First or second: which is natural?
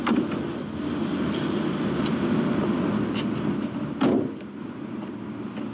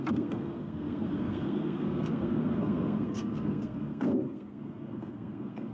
first